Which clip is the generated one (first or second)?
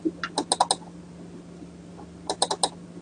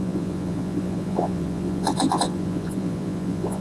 second